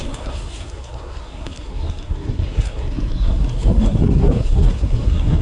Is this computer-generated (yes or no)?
yes